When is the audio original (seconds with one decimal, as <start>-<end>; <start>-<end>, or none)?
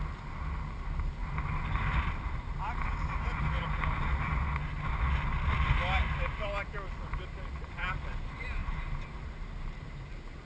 0.0-1.2; 2.0-8.6; 10.1-10.5